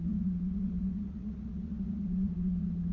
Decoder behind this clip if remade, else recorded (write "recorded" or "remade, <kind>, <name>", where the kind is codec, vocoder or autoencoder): remade, vocoder, Vocos